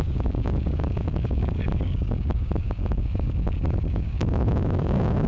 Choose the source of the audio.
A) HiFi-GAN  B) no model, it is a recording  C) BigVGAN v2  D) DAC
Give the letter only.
D